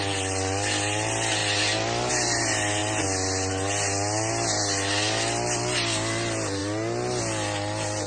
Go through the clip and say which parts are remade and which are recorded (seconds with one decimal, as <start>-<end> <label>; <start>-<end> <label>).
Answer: 0.0-8.1 recorded